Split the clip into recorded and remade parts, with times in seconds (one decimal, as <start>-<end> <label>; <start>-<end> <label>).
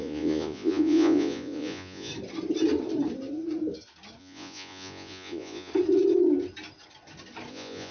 0.0-2.1 remade; 2.1-4.2 recorded; 4.2-5.7 remade; 5.7-7.5 recorded; 7.5-7.9 remade